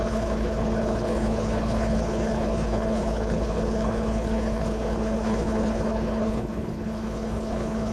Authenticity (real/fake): fake